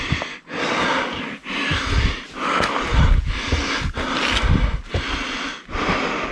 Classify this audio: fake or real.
real